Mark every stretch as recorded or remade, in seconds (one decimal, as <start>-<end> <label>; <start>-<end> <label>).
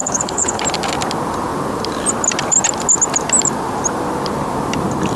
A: 0.0-0.6 remade; 0.6-5.2 recorded